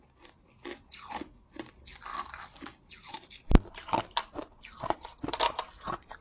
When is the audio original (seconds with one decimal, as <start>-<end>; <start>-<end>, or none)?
0.0-6.2